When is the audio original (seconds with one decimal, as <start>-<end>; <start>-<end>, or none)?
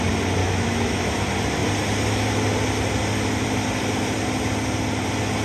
0.0-0.4; 1.1-5.4